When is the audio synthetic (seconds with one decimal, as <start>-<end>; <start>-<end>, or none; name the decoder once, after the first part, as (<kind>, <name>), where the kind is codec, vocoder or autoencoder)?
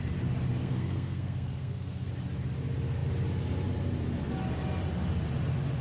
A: 0.6-2.1 (codec, SNAC)